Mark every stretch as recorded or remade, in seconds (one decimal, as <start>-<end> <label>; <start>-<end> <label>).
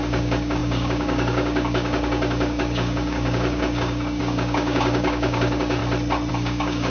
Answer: 0.0-5.8 remade; 5.8-6.3 recorded; 6.3-6.9 remade